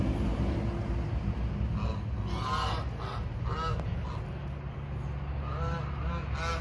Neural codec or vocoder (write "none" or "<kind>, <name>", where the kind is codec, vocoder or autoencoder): none